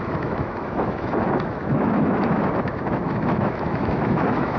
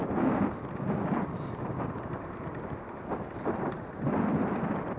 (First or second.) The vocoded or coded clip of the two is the first